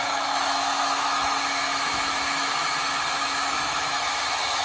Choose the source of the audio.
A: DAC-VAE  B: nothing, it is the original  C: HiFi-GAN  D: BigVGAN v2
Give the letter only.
A